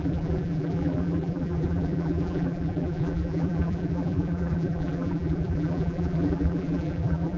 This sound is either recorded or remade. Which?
remade